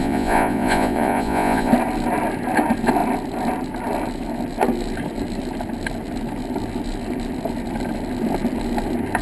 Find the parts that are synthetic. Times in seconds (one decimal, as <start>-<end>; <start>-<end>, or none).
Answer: 0.0-1.7